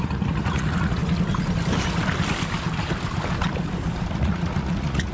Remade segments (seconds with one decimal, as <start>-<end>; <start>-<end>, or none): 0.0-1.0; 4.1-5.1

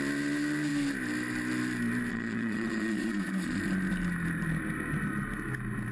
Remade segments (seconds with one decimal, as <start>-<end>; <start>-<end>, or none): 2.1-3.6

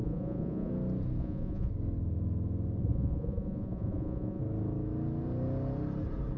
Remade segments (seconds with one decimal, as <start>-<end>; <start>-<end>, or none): 0.0-0.7; 1.2-1.7; 2.8-4.4